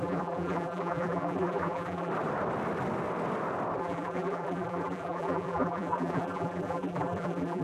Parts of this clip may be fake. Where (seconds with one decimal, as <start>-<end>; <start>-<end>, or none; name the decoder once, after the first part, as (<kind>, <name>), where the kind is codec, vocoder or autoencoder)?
0.0-2.1 (vocoder, BigVGAN v2); 3.8-7.6